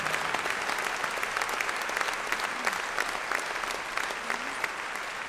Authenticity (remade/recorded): recorded